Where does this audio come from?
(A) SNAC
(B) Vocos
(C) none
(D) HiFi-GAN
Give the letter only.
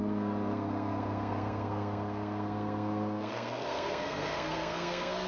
A